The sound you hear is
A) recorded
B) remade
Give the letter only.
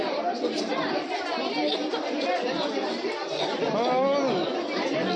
A